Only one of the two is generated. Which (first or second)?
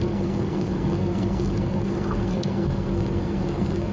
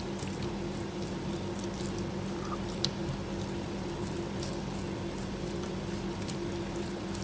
first